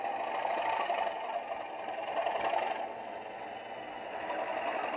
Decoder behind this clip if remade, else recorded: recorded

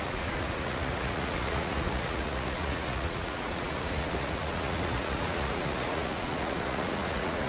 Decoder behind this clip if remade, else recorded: remade, vocoder, Vocos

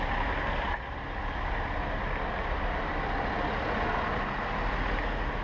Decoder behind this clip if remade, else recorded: recorded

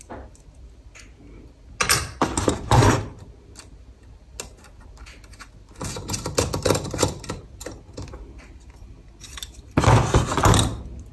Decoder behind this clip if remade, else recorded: recorded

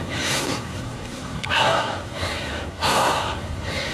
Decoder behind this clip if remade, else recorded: remade, codec, SNAC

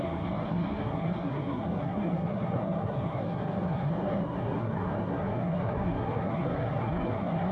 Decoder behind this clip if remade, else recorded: remade, codec, SNAC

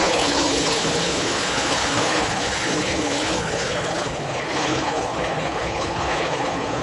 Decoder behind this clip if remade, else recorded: remade, codec, HILCodec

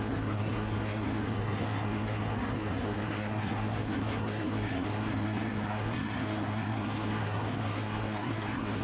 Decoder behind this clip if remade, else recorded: remade, codec, SNAC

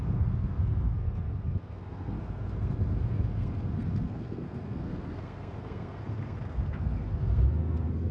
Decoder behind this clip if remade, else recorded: remade, codec, SNAC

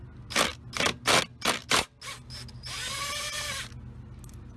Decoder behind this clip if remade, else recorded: recorded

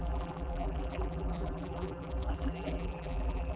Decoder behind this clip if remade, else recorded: remade, vocoder, BigVGAN v2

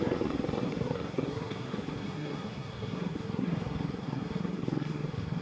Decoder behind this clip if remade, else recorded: remade, codec, SNAC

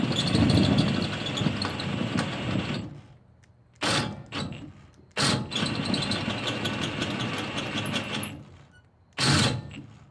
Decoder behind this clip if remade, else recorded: recorded